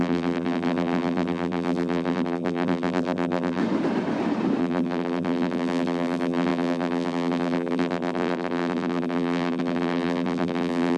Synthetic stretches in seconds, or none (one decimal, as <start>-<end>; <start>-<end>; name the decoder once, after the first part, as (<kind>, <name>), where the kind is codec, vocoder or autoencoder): 0.0-3.6 (vocoder, BigVGAN v2); 4.6-11.0